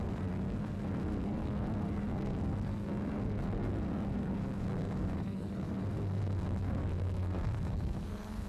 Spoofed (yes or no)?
yes